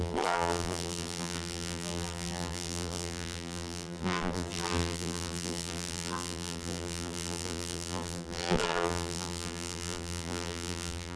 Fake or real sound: fake